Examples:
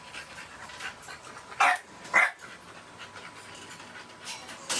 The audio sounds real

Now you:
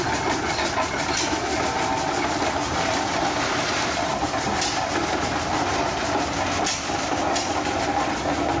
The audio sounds real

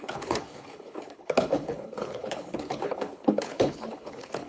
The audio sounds fake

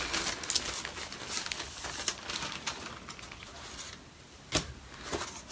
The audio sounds real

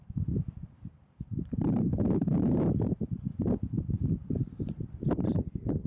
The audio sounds fake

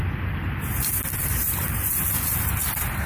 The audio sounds real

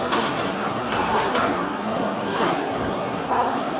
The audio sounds fake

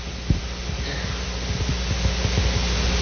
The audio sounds real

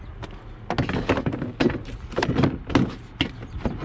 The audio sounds real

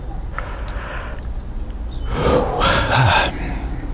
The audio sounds real